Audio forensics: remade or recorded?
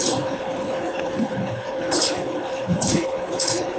remade